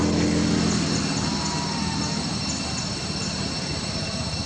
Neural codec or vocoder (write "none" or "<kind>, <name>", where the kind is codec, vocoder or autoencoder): none